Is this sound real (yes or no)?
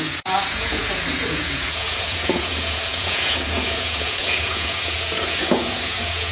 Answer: no